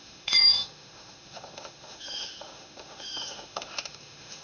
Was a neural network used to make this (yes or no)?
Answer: yes